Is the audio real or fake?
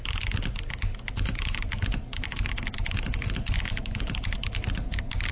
real